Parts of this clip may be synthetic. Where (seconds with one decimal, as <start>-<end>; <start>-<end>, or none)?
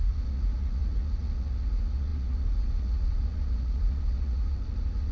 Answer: 0.0-5.1